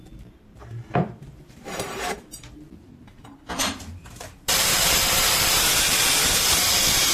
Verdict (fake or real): fake